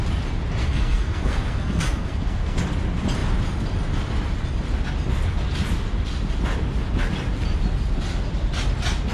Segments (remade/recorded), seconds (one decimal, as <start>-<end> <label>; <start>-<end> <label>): 0.0-0.6 recorded; 0.6-2.6 remade; 2.6-9.1 recorded